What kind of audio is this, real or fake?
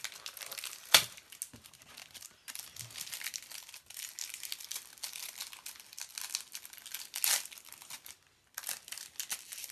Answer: real